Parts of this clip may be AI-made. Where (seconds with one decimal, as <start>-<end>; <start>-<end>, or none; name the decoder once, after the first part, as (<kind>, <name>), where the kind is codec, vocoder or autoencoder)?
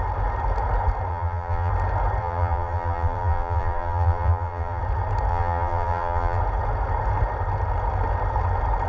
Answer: 1.1-1.7 (vocoder, BigVGAN v2); 2.2-4.8; 5.3-6.4